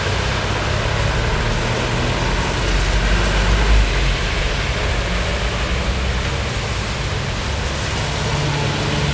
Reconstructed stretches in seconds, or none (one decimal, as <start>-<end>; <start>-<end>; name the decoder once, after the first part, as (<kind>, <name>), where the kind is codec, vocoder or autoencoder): none

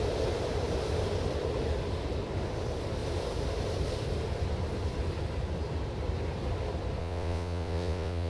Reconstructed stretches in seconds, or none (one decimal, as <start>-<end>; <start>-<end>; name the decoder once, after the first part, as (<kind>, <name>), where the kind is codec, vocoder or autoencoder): 7.0-8.3 (vocoder, Vocos)

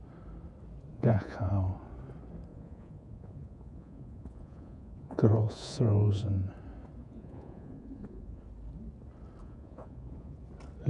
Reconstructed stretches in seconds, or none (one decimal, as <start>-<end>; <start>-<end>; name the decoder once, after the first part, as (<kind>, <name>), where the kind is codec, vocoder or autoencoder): 0.9-1.5 (vocoder, Vocos); 2.5-6.5; 7.0-8.4; 9.4-10.4

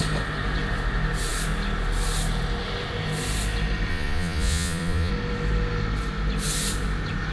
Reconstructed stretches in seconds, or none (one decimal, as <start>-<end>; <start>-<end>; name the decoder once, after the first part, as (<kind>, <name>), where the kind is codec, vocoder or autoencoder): 3.9-5.1 (vocoder, Vocos)

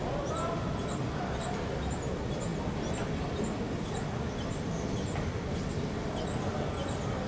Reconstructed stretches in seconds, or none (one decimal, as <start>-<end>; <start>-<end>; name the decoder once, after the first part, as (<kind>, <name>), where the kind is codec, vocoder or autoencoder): none